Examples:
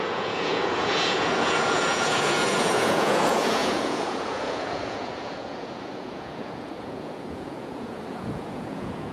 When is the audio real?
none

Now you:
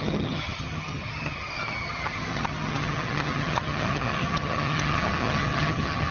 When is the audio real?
none

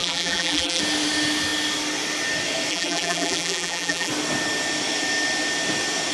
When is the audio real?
0.8-2.7; 4.1-6.1

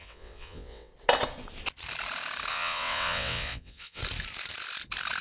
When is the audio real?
0.9-2.5; 4.0-5.2

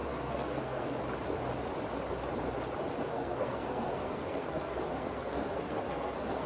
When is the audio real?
1.0-3.1